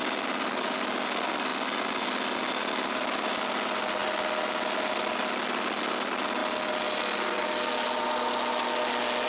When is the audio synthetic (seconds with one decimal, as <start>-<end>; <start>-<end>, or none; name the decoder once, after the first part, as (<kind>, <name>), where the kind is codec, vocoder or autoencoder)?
none